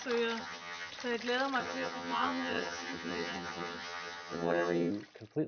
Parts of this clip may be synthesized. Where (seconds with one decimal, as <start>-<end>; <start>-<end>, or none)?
0.4-0.9; 1.6-4.9